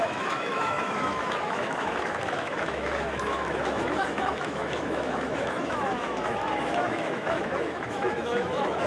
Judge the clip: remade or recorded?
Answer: remade